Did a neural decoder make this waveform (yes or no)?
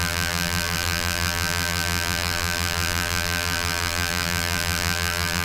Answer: yes